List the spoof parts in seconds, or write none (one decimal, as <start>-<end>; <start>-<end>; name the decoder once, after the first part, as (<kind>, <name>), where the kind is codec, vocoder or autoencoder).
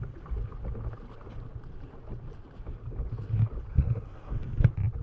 3.7-4.3 (codec, SNAC)